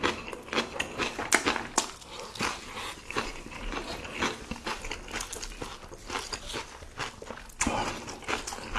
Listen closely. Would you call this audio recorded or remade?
recorded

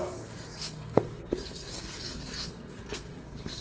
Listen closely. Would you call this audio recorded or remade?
remade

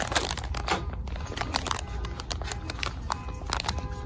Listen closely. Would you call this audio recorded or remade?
recorded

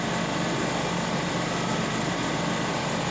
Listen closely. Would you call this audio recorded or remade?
recorded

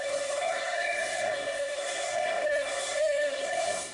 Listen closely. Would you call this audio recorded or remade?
remade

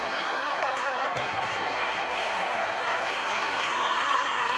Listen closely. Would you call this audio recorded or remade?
remade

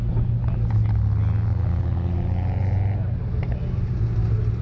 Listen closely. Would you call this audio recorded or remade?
recorded